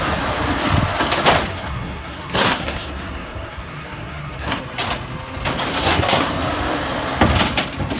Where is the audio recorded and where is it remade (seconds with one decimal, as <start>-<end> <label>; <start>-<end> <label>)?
0.0-1.5 recorded; 1.5-4.6 remade; 4.6-5.7 recorded; 5.7-6.3 remade; 6.3-8.0 recorded